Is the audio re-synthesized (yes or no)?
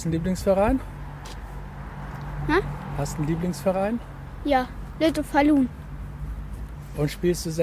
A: no